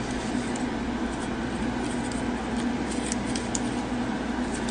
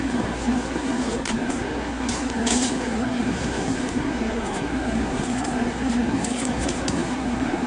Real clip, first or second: first